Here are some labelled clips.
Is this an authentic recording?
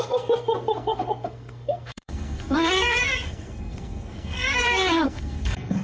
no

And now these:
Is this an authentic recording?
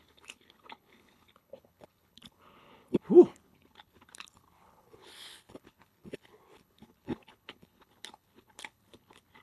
no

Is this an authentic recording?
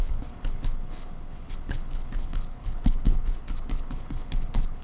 no